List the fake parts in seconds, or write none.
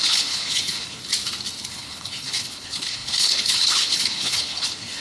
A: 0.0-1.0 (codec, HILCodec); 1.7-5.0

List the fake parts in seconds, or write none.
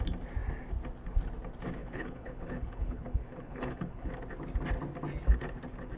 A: 1.8-4.1 (codec, HILCodec)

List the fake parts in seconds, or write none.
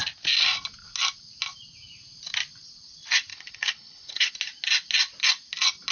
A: 3.3-4.3 (codec, HILCodec)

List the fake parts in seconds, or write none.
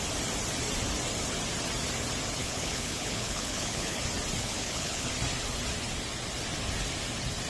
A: 2.4-4.0 (codec, HILCodec); 4.4-5.1